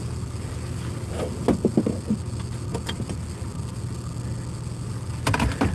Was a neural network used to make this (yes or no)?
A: no